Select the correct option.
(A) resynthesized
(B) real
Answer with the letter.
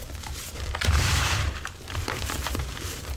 A